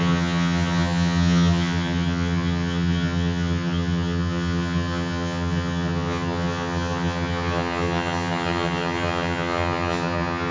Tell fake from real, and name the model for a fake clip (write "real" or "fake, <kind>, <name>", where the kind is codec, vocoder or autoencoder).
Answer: fake, vocoder, HiFi-GAN